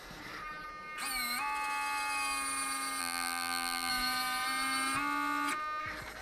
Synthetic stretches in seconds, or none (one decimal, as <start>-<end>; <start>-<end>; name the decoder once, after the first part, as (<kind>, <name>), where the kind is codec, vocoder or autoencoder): 3.0-3.9 (vocoder, BigVGAN v2)

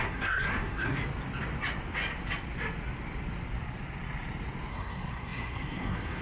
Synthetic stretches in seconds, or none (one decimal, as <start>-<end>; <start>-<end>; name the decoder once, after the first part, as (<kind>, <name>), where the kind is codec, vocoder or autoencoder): 0.0-1.0 (codec, SNAC); 4.7-6.2

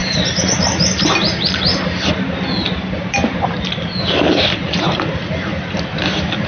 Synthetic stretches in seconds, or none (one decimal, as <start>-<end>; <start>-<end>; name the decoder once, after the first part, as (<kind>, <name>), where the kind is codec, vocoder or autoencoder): 3.4-6.5 (vocoder, BigVGAN v2)

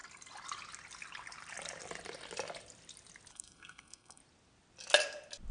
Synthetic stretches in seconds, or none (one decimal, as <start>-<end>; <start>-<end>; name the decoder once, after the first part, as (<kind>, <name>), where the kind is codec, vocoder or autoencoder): 3.3-4.2 (codec, SNAC)

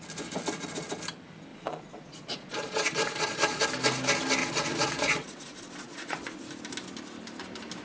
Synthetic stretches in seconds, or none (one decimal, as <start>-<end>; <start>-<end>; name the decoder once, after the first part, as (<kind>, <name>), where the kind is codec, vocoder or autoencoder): 1.5-3.6 (vocoder, Vocos); 4.4-6.4

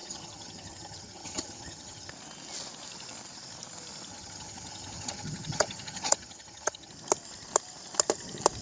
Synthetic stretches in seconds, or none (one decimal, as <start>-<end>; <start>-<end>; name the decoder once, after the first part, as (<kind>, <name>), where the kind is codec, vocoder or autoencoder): 0.0-2.1 (vocoder, HiFi-GAN); 4.1-6.9

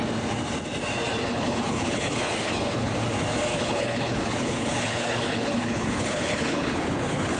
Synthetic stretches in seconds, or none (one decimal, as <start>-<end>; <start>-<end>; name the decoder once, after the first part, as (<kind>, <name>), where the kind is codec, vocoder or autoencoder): 1.3-2.9 (codec, HILCodec); 3.5-7.4

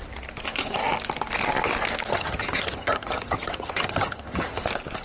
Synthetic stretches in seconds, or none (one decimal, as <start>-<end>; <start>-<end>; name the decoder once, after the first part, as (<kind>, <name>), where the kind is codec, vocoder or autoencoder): 2.1-4.6 (vocoder, HiFi-GAN)